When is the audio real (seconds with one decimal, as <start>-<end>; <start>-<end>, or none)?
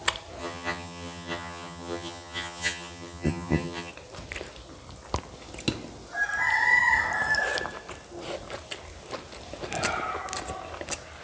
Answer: 0.0-0.4; 3.9-11.2